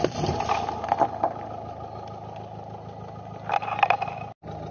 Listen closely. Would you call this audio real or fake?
real